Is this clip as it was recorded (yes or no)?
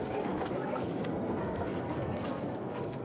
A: no